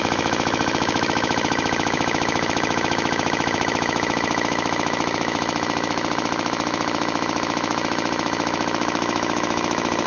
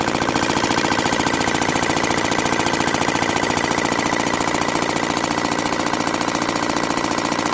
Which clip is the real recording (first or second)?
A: second